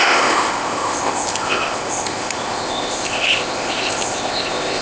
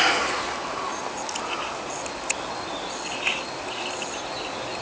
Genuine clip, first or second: second